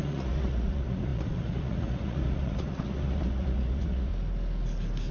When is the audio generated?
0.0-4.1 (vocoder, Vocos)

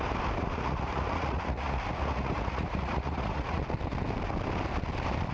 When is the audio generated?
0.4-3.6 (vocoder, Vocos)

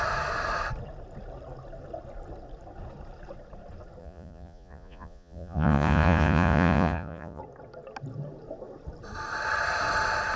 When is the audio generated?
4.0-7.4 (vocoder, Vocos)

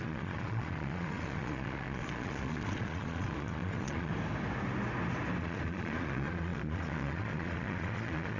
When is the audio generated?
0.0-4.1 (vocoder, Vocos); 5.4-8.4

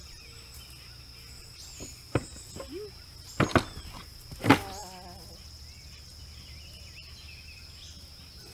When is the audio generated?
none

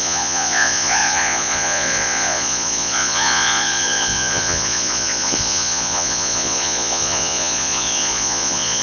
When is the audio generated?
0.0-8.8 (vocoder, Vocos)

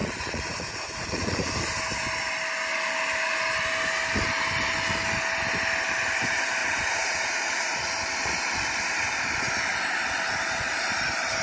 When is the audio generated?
0.0-1.5 (vocoder, Vocos); 6.6-7.9

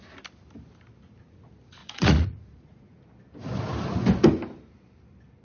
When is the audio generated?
1.8-3.0 (vocoder, Vocos)